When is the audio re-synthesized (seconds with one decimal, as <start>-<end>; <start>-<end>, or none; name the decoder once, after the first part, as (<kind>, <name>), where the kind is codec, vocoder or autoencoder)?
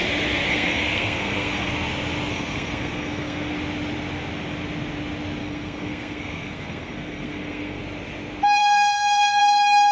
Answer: 0.5-1.7 (codec, SNAC); 2.3-3.5; 5.4-7.8; 8.6-9.4